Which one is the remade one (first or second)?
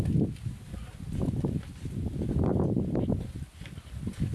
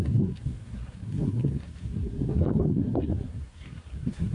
second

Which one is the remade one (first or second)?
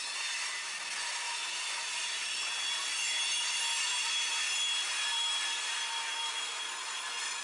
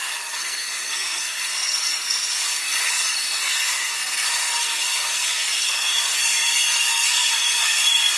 second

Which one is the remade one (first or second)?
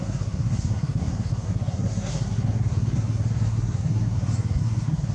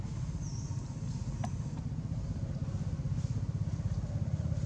first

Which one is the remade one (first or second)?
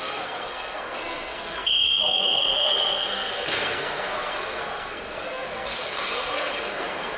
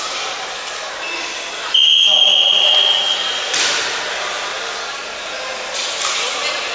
first